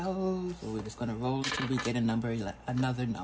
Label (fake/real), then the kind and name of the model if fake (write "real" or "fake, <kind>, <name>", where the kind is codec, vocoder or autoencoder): real